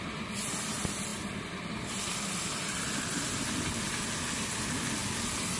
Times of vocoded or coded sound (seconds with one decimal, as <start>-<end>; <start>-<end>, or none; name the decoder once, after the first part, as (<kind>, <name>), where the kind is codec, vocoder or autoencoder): none